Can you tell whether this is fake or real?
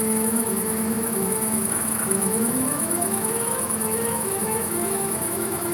fake